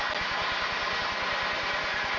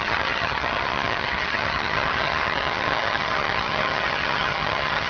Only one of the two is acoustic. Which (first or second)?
first